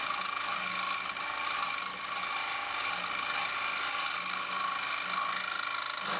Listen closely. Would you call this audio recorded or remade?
recorded